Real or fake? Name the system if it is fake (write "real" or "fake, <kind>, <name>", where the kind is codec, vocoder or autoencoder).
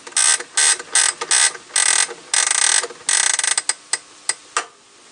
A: real